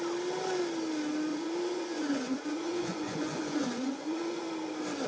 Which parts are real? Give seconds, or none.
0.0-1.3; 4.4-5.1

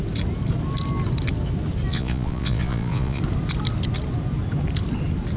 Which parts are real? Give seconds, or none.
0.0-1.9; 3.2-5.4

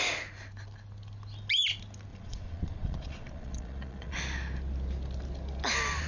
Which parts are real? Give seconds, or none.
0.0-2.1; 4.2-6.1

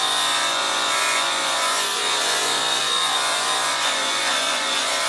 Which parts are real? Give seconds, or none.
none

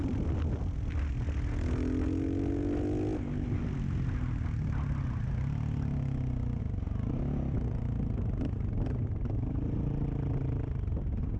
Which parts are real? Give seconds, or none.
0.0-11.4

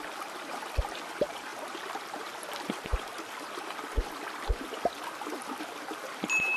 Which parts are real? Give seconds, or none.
0.0-6.6

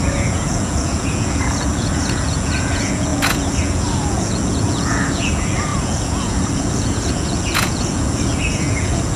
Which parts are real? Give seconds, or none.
none

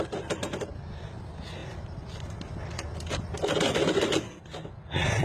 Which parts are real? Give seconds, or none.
0.0-5.2